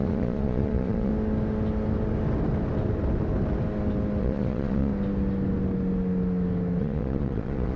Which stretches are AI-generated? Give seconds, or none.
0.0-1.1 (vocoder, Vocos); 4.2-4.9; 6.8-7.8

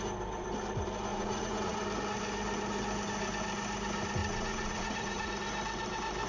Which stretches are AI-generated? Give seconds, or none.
1.1-1.8 (vocoder, Vocos); 4.2-5.3

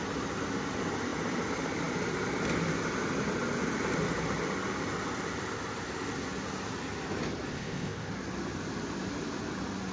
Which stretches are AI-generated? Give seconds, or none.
7.5-8.1 (codec, ZipCodec)

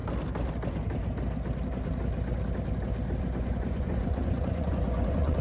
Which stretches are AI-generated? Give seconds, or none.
3.2-5.4 (vocoder, Vocos)